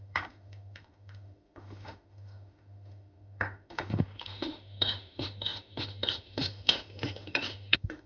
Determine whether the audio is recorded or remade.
remade